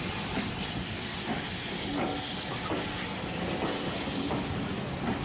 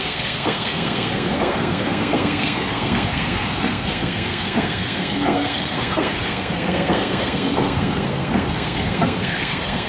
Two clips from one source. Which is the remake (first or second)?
second